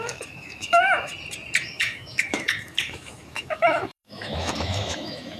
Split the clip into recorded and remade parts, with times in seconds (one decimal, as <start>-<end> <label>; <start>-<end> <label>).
0.0-1.1 remade; 1.1-1.6 recorded; 1.6-5.4 remade